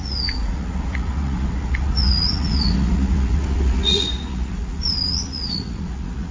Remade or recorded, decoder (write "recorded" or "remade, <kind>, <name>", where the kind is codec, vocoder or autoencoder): remade, vocoder, Vocos